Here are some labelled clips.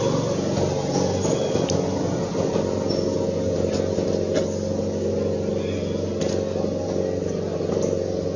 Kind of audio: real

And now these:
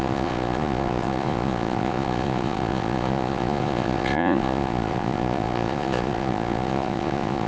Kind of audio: fake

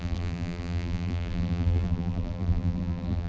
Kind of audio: fake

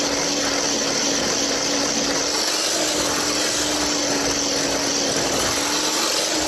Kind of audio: real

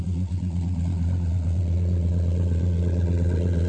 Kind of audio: fake